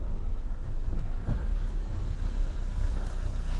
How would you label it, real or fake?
fake